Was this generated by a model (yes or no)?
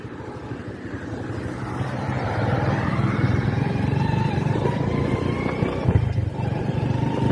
yes